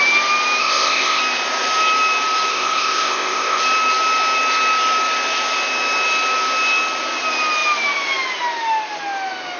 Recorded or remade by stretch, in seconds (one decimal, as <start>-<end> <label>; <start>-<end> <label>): 0.0-0.6 recorded; 0.6-1.2 remade; 1.2-2.5 recorded; 2.5-3.6 remade; 3.6-9.6 recorded